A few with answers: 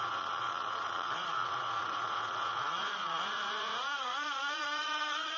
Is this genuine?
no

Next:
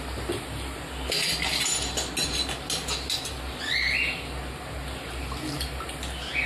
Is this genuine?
yes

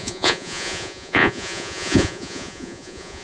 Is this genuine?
no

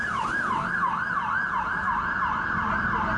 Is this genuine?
yes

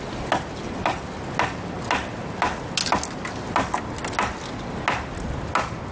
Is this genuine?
yes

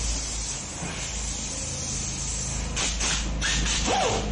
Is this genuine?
yes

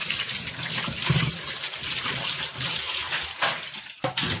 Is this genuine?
yes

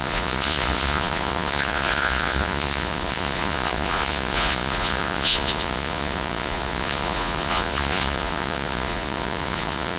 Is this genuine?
no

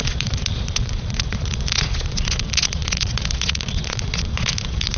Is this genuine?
no